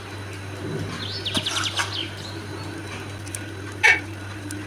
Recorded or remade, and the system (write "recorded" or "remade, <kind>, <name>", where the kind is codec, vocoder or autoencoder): recorded